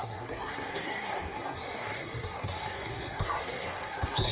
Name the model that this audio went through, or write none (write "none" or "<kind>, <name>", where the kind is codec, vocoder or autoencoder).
codec, SNAC